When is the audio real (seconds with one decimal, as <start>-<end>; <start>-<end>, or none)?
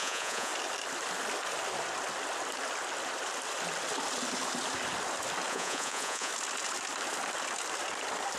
0.5-5.5; 6.3-8.4